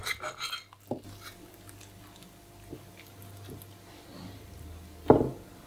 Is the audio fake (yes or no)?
no